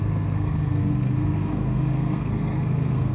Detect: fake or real fake